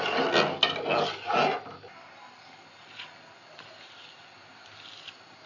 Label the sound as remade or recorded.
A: recorded